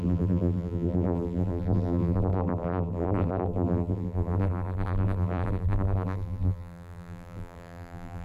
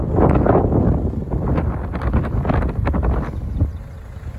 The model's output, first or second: first